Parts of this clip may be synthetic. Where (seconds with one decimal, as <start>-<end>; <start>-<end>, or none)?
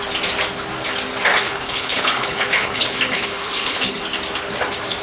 1.3-4.0